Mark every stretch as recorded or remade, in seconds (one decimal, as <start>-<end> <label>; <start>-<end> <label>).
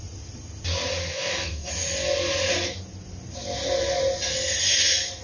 0.0-1.1 recorded; 1.1-1.7 remade; 1.7-5.2 recorded